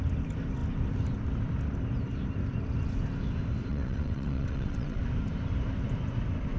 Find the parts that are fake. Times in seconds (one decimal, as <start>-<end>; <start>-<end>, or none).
3.7-5.0